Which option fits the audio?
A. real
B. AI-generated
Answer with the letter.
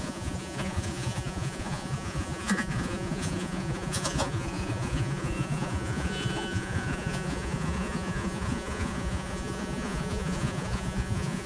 B